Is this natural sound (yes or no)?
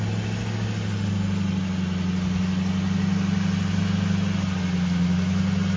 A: yes